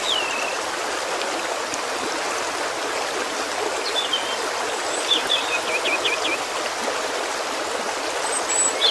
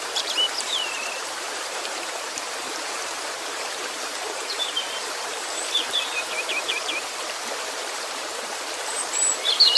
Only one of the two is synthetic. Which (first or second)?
second